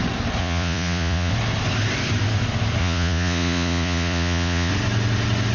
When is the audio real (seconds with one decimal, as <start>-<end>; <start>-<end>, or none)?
0.0-0.4; 1.3-2.8; 4.7-5.5